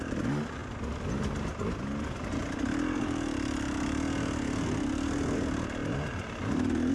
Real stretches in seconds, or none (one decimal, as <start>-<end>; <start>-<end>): 0.0-6.9